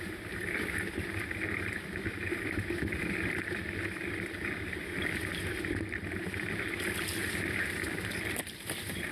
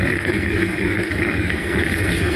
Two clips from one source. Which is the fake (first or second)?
second